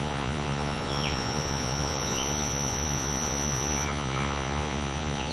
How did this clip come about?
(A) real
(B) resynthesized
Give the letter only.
B